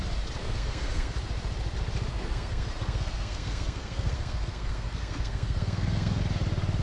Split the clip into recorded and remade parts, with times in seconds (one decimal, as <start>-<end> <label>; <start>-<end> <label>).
0.0-0.4 recorded; 0.4-1.1 remade; 1.1-2.1 recorded; 2.1-6.2 remade; 6.2-6.8 recorded